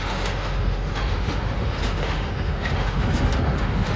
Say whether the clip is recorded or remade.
remade